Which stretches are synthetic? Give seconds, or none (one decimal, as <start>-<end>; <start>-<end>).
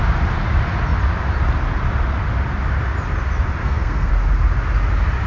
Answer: 3.6-4.1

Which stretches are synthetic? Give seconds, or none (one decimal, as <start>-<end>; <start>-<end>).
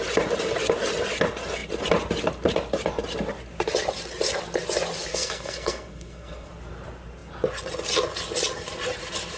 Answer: 5.1-6.5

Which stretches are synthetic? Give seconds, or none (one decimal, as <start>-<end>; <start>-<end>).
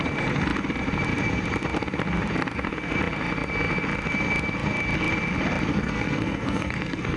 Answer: 5.7-7.2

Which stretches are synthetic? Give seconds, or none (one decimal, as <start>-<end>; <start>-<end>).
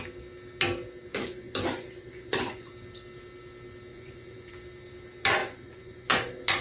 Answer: 1.1-2.7; 3.9-4.5; 5.4-6.6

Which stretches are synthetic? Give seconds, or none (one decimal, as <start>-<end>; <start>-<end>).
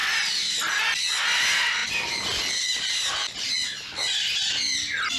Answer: 1.8-3.5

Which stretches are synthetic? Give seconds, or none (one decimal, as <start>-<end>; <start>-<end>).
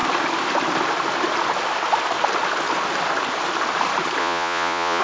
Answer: 4.2-5.0